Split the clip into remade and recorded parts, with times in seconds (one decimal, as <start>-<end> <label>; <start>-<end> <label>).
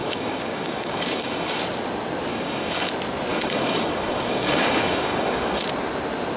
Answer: 0.0-1.6 remade; 1.6-2.3 recorded; 2.3-2.9 remade; 2.9-3.3 recorded; 3.3-5.6 remade; 5.6-6.4 recorded